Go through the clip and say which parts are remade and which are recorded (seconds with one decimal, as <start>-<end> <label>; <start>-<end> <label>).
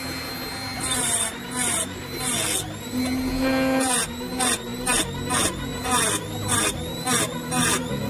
0.0-0.7 recorded; 0.7-1.2 remade; 1.2-5.7 recorded; 5.7-6.6 remade; 6.6-8.1 recorded